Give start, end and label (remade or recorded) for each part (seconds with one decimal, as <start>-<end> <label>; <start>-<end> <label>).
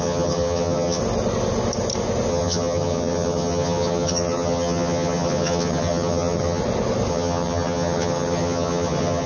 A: 0.0-1.0 remade; 1.0-2.3 recorded; 2.3-6.6 remade; 6.6-7.1 recorded; 7.1-9.3 remade